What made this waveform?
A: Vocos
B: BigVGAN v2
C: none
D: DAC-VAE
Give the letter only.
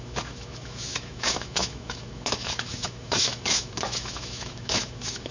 D